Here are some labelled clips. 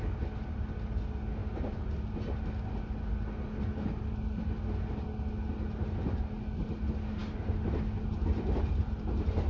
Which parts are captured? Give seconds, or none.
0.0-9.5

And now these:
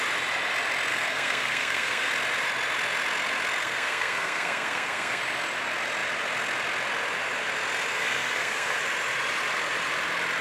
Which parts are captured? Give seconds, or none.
0.0-0.9; 2.1-3.6; 5.2-7.9; 8.8-10.4

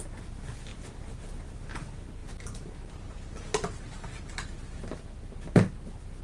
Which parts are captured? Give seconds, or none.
0.0-0.7; 1.7-6.2

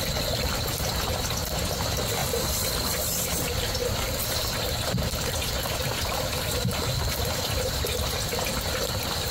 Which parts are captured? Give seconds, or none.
3.8-5.1

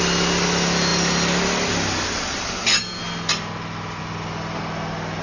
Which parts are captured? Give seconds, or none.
0.0-5.2